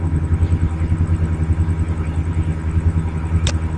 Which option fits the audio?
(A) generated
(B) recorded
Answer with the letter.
B